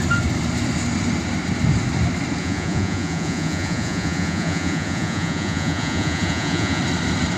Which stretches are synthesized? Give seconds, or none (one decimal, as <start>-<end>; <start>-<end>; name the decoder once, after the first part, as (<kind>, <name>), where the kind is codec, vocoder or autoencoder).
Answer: 2.4-6.8 (vocoder, Vocos)